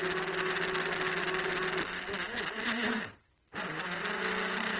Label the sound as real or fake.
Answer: real